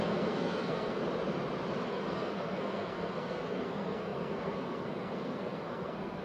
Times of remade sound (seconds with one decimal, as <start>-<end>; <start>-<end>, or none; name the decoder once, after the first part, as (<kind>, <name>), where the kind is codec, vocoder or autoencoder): 0.0-1.0 (codec, SNAC); 1.9-6.2